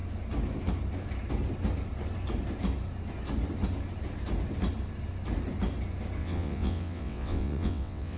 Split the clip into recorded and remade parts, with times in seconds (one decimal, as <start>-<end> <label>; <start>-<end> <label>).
0.0-6.2 recorded; 6.2-8.2 remade